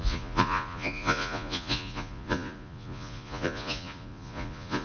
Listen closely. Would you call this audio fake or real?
fake